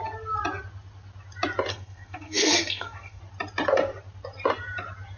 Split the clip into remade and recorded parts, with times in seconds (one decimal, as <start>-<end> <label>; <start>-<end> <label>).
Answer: 0.0-1.7 recorded; 1.7-3.2 remade; 3.2-5.2 recorded